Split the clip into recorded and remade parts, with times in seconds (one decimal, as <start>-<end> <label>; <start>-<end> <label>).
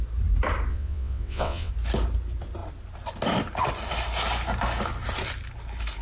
0.0-0.7 recorded; 0.7-1.7 remade; 1.7-6.0 recorded